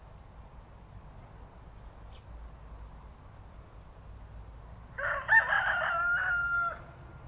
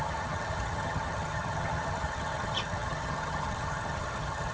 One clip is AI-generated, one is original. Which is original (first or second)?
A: first